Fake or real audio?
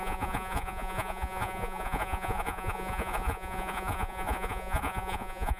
fake